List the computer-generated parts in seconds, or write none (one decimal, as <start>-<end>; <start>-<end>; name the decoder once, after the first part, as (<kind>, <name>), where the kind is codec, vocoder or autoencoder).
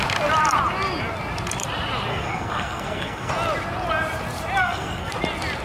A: 2.1-3.3 (codec, SNAC); 4.6-5.1